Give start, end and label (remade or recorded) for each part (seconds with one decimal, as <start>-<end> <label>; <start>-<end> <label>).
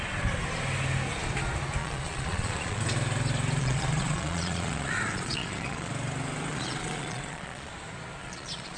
0.0-1.8 recorded; 1.8-2.8 remade; 2.8-3.6 recorded; 3.6-5.9 remade; 5.9-6.5 recorded; 6.5-7.7 remade; 7.7-8.2 recorded; 8.2-8.8 remade